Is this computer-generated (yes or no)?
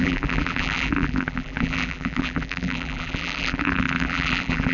yes